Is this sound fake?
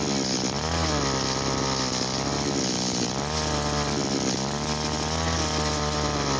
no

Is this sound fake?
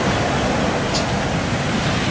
no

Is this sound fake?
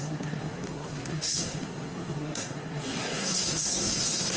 yes